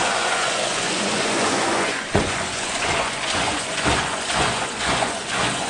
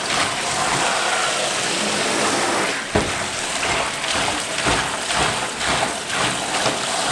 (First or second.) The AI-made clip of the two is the first